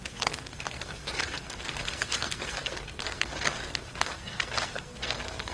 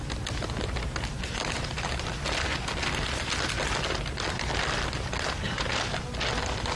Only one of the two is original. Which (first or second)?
second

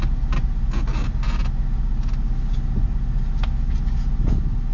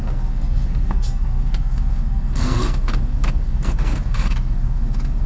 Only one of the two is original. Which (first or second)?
first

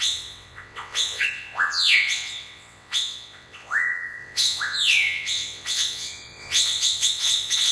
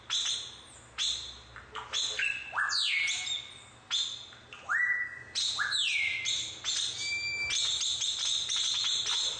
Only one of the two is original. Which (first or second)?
second